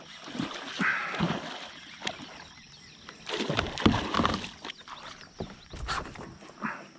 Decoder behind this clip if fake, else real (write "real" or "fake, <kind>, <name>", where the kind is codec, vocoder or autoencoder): real